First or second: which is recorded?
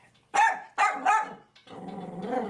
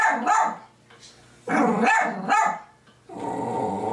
second